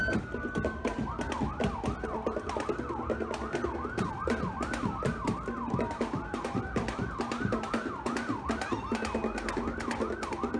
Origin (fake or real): real